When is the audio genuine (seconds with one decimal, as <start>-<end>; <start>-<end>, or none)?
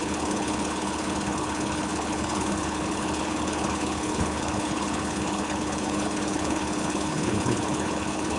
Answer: none